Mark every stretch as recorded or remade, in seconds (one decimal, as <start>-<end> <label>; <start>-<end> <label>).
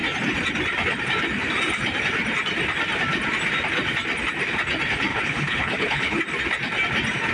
0.0-5.1 recorded; 5.1-6.2 remade; 6.2-7.3 recorded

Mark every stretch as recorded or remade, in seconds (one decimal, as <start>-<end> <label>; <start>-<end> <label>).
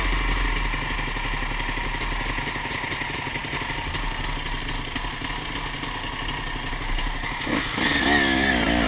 0.0-8.9 recorded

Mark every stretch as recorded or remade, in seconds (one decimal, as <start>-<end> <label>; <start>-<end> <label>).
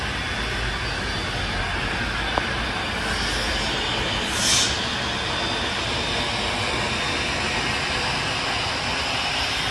0.0-9.7 recorded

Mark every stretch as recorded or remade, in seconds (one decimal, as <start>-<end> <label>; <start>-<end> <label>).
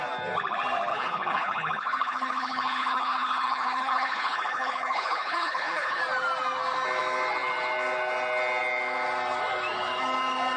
0.0-0.9 recorded; 0.9-6.0 remade; 6.0-10.6 recorded